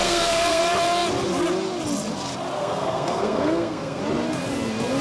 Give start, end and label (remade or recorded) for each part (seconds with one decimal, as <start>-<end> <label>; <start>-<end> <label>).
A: 0.0-0.6 remade; 0.6-2.6 recorded; 2.6-4.0 remade; 4.0-5.0 recorded